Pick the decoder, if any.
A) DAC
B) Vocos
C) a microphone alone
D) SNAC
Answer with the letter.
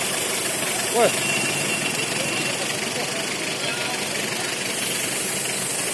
C